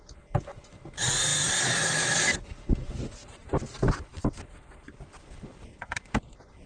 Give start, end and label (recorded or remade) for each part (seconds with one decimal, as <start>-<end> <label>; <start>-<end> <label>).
0.0-6.7 recorded